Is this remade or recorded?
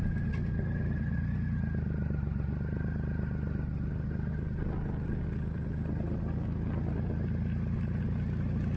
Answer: recorded